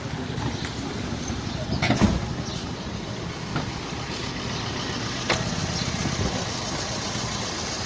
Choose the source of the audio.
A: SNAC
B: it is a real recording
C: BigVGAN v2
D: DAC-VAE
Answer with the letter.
B